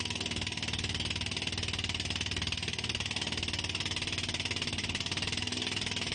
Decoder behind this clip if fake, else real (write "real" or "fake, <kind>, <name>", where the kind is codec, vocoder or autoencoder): real